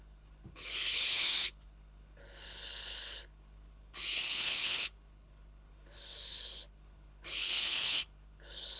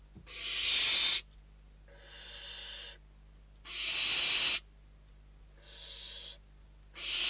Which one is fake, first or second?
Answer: first